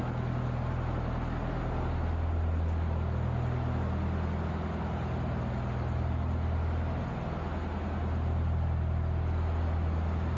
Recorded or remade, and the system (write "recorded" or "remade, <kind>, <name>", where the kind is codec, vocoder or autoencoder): recorded